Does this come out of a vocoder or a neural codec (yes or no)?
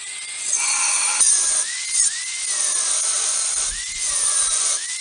yes